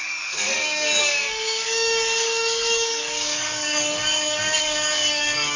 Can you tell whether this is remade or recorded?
remade